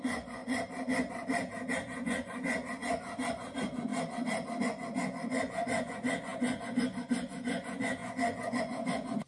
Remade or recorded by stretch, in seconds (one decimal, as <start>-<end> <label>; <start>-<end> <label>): 0.0-0.4 remade; 0.4-1.7 recorded; 1.7-3.9 remade; 3.9-4.6 recorded; 4.6-9.3 remade